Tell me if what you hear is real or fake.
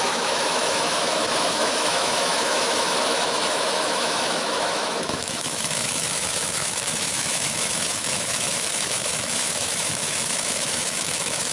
fake